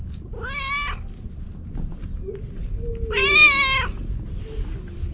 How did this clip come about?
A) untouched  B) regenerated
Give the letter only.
A